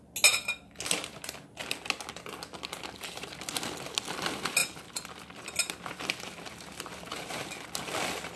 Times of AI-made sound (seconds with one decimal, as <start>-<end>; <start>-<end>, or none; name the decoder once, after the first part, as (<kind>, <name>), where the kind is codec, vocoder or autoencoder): none